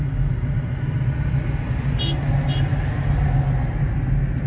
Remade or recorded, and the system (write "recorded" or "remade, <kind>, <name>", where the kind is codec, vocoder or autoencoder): recorded